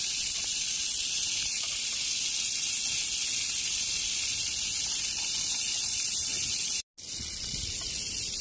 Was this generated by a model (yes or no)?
no